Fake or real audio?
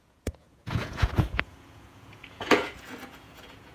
fake